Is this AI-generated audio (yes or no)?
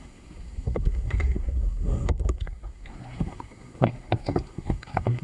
yes